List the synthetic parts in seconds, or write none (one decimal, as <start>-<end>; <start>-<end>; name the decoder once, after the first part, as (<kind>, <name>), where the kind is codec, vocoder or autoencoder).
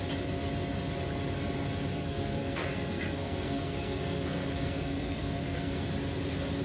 1.9-5.9 (codec, SNAC)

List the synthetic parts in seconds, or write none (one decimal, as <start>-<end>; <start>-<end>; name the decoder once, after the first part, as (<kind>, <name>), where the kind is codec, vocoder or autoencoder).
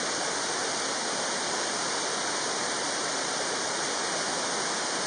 none